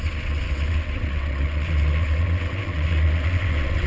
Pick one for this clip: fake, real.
fake